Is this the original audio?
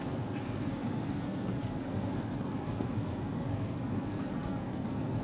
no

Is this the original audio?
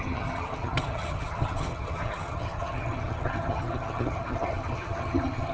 no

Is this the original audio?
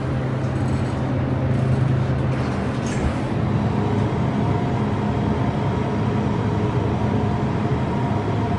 yes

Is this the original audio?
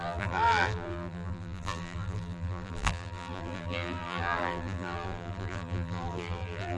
no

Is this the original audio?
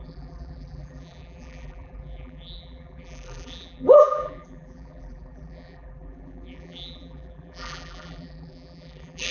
no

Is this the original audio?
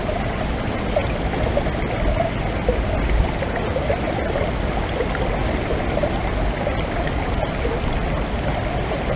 yes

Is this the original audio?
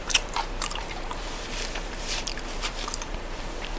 no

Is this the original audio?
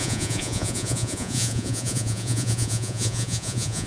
no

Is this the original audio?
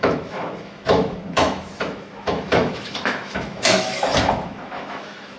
no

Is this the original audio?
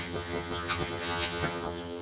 no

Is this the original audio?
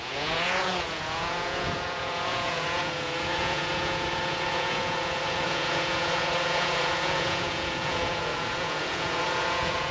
no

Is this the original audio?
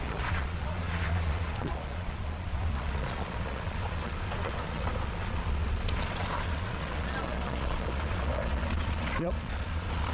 no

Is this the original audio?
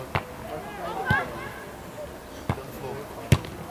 yes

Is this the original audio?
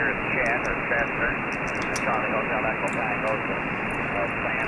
yes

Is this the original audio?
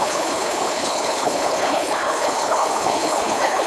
no